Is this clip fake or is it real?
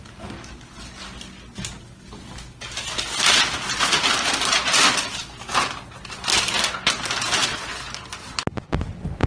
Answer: real